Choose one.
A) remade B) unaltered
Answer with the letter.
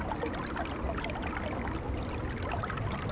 B